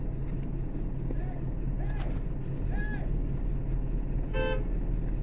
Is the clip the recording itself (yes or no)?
yes